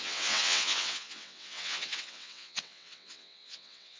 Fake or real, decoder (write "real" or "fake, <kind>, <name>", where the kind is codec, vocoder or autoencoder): fake, vocoder, WaveNeXt